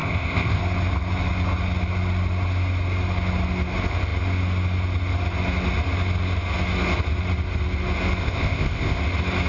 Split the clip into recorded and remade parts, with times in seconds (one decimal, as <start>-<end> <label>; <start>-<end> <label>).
0.0-0.6 remade; 0.6-8.2 recorded; 8.2-9.0 remade; 9.0-9.5 recorded